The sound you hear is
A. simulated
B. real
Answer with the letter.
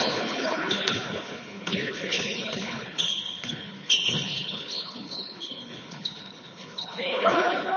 A